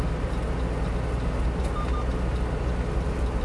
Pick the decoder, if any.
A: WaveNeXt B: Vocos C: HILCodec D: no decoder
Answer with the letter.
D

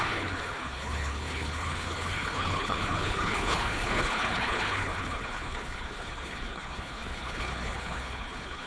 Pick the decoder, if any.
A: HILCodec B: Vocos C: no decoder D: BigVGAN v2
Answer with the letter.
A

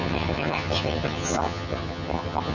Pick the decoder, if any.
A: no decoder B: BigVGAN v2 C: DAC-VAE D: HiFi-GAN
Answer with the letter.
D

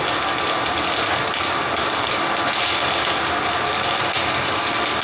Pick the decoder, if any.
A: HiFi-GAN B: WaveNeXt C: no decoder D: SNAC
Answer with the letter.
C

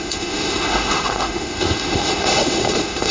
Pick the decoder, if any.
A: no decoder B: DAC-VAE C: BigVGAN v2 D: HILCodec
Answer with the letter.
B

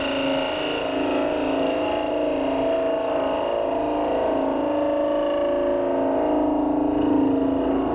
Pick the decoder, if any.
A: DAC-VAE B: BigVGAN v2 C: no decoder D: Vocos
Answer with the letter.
C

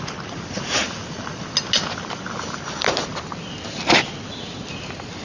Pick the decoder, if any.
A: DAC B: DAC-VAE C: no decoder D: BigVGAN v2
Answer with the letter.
C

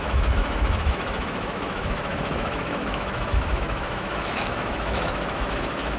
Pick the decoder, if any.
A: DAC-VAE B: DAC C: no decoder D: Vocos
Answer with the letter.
A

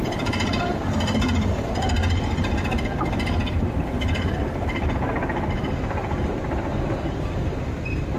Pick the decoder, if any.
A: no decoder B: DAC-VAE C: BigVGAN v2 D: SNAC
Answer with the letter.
A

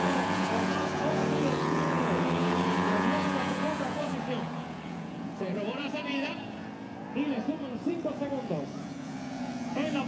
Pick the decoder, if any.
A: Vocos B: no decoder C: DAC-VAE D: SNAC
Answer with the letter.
A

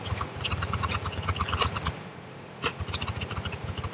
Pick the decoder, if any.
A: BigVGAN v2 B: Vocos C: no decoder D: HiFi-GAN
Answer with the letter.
B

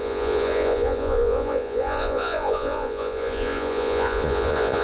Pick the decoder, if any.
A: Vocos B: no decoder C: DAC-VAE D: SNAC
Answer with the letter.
A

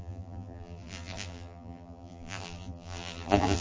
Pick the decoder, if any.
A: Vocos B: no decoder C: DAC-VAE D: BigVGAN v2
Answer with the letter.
D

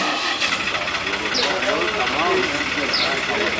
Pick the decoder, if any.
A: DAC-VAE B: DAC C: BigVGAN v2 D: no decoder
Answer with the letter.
D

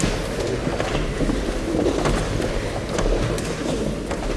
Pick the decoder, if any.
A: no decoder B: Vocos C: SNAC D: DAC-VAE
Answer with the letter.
A